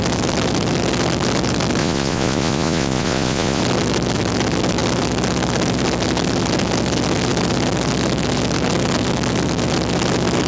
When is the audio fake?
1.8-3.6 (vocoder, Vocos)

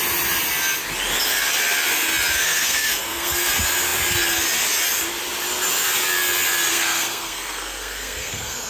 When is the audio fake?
2.4-3.5 (codec, SNAC); 6.7-8.7

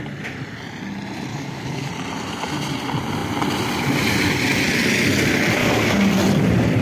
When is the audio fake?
1.3-1.9 (codec, DAC); 5.6-6.1

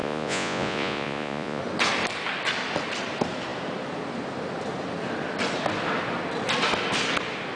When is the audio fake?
0.0-1.6 (vocoder, Vocos)

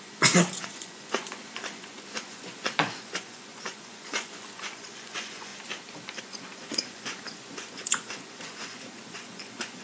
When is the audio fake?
0.0-5.5 (vocoder, Vocos); 6.2-9.8

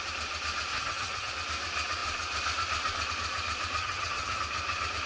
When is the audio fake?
0.7-1.3 (vocoder, HiFi-GAN); 3.8-4.4

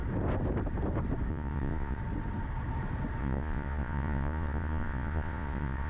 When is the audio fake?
1.3-2.0 (vocoder, Vocos); 3.2-5.9

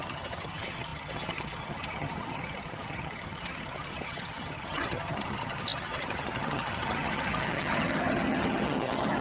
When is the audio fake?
0.0-9.2 (vocoder, HiFi-GAN)